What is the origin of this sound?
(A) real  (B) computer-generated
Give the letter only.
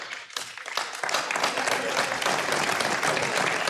A